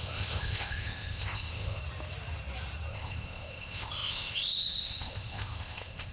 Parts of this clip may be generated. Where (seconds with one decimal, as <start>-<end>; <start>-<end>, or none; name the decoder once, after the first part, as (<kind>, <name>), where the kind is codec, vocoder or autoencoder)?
0.0-1.8 (codec, ZipCodec); 2.9-6.1